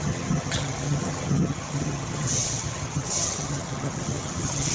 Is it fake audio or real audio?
fake